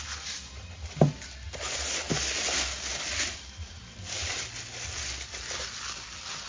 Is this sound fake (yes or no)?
no